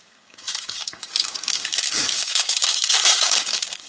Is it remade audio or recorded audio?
remade